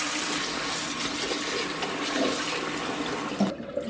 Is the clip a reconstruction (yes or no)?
no